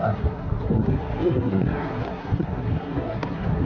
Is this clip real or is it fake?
fake